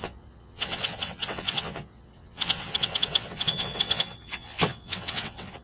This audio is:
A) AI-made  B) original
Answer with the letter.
A